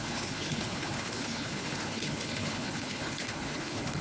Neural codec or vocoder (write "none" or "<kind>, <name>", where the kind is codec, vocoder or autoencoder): codec, HILCodec